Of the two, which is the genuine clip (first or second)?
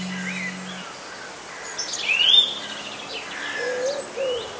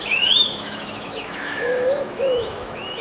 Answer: first